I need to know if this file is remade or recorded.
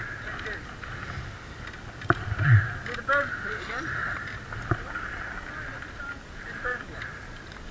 recorded